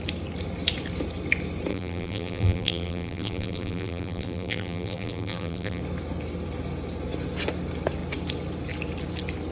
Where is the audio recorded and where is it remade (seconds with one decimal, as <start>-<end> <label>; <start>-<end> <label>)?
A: 0.0-1.7 recorded; 1.7-5.8 remade; 5.8-9.5 recorded